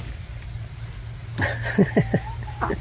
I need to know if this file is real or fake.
real